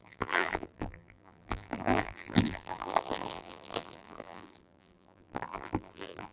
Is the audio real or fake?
fake